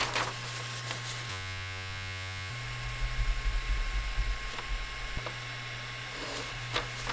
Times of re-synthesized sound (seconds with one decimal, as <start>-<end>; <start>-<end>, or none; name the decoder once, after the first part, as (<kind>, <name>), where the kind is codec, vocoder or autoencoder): 1.3-2.5 (vocoder, Vocos)